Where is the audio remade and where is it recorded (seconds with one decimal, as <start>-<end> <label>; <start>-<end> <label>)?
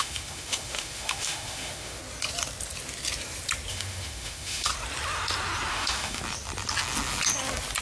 0.0-2.0 remade; 2.0-3.7 recorded; 3.7-4.7 remade; 4.7-5.7 recorded; 5.7-6.2 remade; 6.2-7.8 recorded